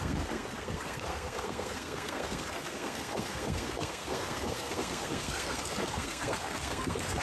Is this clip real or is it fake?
fake